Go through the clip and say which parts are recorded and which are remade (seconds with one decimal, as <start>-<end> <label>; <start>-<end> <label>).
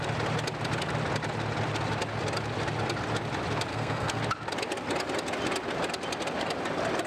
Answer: 0.0-3.7 recorded; 3.7-4.2 remade; 4.2-7.1 recorded